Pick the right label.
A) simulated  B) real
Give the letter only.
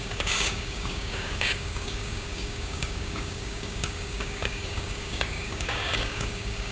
A